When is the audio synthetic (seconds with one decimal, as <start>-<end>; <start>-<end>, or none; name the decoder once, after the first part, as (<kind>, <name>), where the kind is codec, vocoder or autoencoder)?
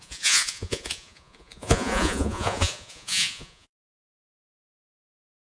0.0-5.5 (vocoder, Vocos)